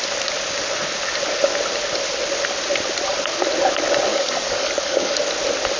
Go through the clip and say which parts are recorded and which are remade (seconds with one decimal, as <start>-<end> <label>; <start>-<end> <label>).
0.0-4.1 recorded; 4.1-5.2 remade; 5.2-5.8 recorded